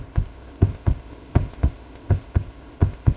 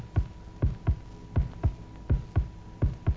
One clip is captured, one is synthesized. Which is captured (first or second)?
second